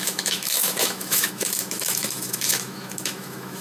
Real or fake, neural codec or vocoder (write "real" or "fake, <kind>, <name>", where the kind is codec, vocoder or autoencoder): fake, autoencoder, DAC-VAE